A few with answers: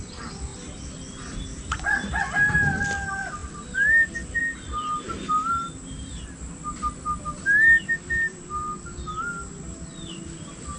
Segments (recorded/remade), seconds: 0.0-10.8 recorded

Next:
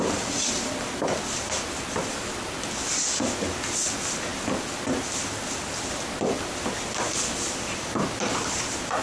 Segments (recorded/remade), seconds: 0.0-9.0 recorded

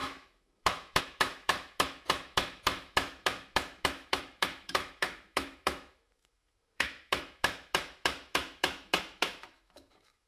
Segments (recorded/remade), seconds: 0.0-10.3 remade

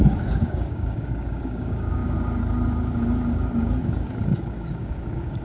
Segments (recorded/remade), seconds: 0.0-5.4 remade